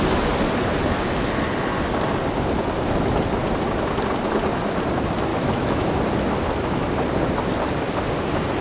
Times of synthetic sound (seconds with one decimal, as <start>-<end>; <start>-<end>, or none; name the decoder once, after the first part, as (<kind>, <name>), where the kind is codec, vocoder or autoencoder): 5.3-5.9 (autoencoder, DAC-VAE)